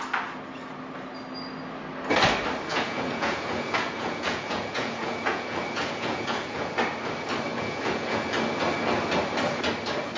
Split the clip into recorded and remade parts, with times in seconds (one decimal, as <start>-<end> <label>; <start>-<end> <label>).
0.0-2.7 recorded; 2.7-6.7 remade; 6.7-7.5 recorded; 7.5-8.3 remade; 8.3-10.2 recorded